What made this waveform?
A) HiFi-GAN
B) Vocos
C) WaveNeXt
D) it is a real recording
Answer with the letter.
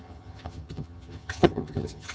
A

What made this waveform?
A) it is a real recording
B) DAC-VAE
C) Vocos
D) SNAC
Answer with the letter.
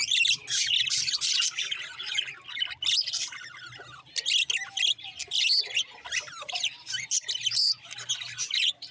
A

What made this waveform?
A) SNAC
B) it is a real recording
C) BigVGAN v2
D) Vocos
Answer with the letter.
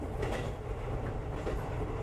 B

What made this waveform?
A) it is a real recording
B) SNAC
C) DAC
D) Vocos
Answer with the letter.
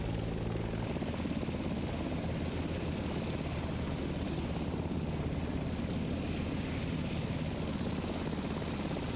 A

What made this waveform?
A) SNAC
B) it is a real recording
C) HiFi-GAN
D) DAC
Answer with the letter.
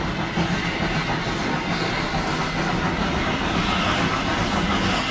B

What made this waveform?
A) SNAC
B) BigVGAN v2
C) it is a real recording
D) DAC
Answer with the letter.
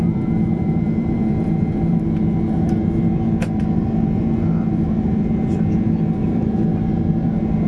B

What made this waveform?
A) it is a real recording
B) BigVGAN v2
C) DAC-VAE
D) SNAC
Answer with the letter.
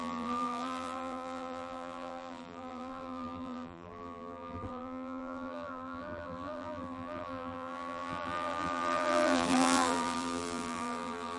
B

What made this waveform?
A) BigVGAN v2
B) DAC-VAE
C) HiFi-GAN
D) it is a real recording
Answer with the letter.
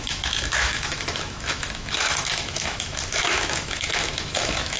B